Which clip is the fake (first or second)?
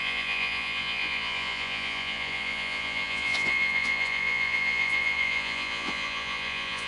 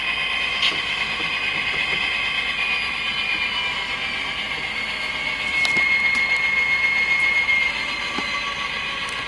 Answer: first